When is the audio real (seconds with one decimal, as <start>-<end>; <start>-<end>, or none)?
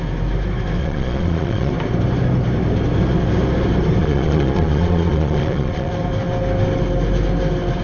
0.0-0.8; 1.7-4.0; 5.9-7.8